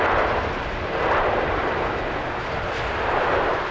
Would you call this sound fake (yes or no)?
no